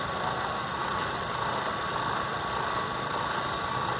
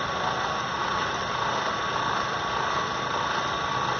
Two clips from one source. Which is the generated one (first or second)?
first